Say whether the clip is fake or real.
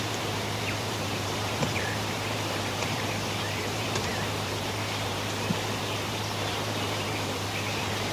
fake